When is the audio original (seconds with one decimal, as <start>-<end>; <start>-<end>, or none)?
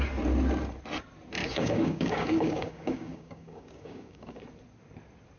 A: 0.0-1.4; 4.4-5.4